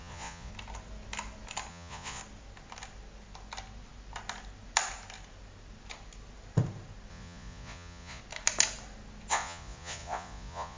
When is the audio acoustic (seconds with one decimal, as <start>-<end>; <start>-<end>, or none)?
0.5-1.7; 2.2-7.1; 8.2-9.3